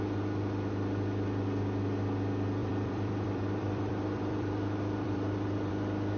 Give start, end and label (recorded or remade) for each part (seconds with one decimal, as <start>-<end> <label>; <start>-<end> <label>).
0.0-2.6 recorded; 2.6-5.7 remade; 5.7-6.2 recorded